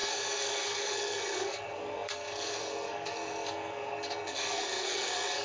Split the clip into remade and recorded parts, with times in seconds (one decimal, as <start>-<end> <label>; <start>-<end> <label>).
0.0-5.4 remade